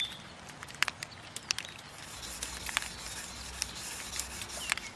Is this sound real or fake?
real